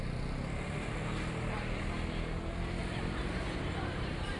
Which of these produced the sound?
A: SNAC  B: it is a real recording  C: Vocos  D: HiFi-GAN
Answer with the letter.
B